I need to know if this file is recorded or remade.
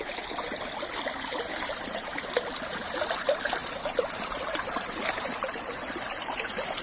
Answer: recorded